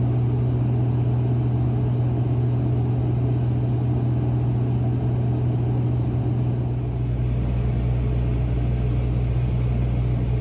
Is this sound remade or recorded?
recorded